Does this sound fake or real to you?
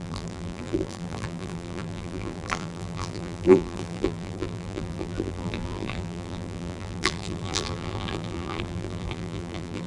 fake